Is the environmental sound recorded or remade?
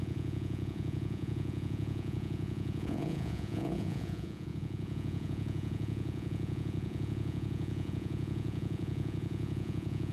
remade